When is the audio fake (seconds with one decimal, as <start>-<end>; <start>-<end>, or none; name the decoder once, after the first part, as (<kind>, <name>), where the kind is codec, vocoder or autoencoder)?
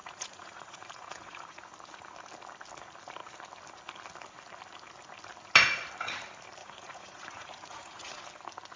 0.0-1.6 (vocoder, Vocos); 6.6-8.2